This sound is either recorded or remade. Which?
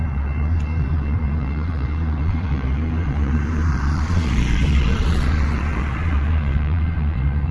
remade